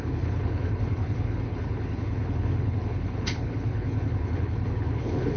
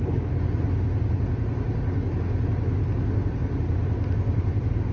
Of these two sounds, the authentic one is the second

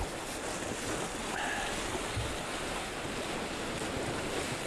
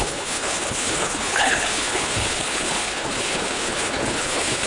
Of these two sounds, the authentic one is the first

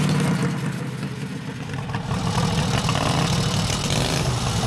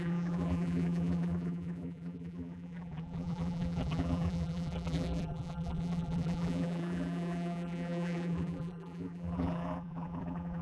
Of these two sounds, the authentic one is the first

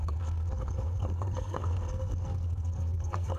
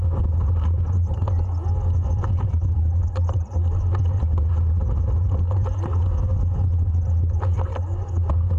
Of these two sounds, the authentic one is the second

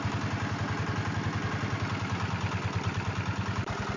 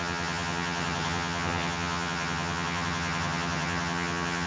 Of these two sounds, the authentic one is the first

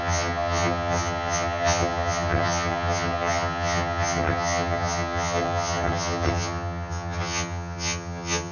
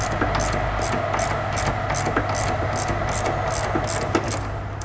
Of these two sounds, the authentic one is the second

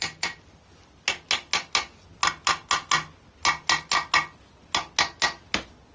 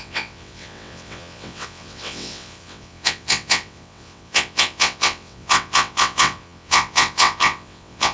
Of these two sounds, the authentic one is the first